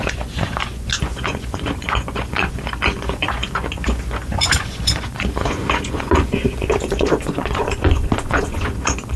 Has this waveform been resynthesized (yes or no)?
yes